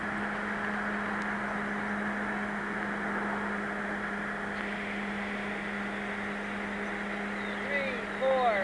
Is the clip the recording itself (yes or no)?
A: yes